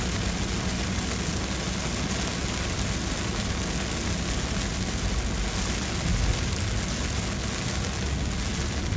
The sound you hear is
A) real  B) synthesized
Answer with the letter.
A